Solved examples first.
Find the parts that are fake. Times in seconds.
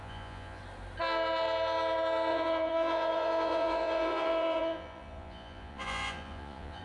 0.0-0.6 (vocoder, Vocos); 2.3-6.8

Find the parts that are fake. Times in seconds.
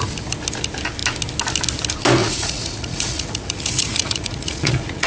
2.2-5.1 (vocoder, Vocos)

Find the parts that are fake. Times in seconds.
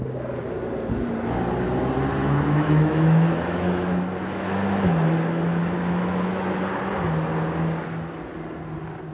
2.2-6.6 (autoencoder, DAC-VAE)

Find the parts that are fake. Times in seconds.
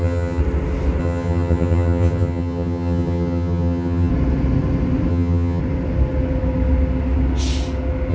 0.0-0.4 (vocoder, HiFi-GAN); 1.0-4.1; 5.1-5.6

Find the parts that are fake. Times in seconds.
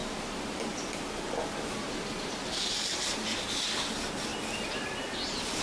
0.0-3.4 (vocoder, BigVGAN v2)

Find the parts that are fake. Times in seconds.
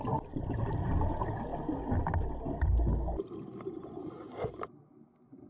none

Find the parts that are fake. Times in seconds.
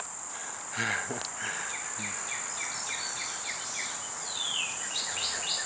3.8-5.7 (vocoder, Vocos)